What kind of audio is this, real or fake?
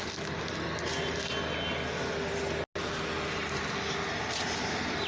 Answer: real